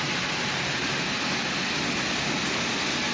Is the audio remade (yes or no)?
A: no